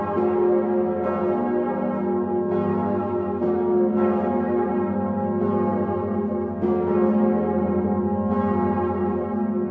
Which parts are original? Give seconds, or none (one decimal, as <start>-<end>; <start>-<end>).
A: 0.0-2.7; 4.7-9.7